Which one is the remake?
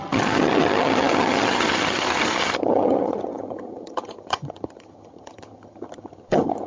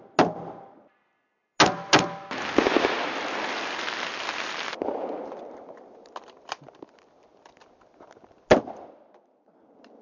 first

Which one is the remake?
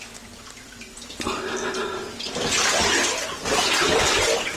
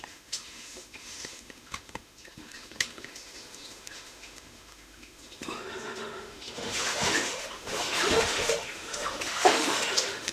second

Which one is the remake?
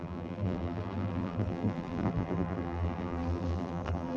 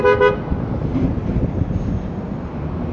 first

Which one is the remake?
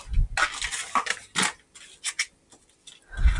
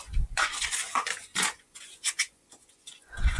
second